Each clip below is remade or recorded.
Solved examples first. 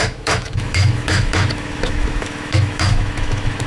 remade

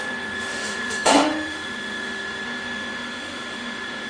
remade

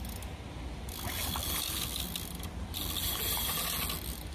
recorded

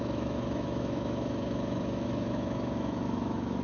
remade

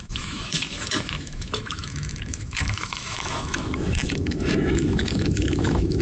remade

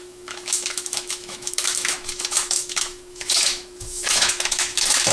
remade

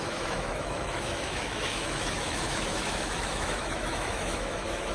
remade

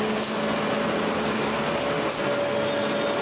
recorded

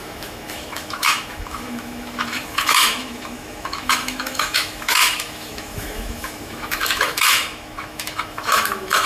remade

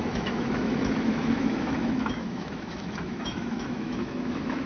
remade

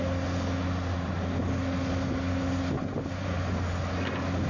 recorded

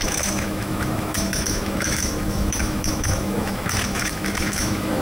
remade